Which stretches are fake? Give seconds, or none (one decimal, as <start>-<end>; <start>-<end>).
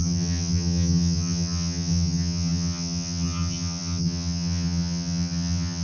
0.0-5.8